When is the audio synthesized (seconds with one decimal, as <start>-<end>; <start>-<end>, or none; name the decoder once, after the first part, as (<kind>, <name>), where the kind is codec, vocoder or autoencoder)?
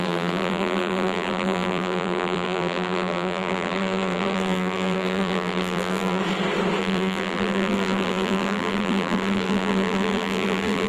0.0-6.2 (vocoder, BigVGAN v2); 6.8-10.9